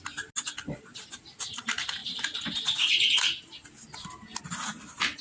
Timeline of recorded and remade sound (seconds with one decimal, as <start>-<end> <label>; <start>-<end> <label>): 0.0-0.9 recorded; 0.9-1.6 remade; 1.6-5.2 recorded